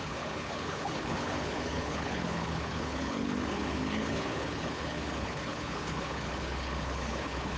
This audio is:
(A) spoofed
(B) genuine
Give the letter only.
A